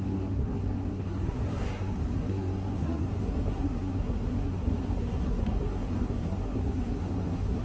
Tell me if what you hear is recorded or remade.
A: remade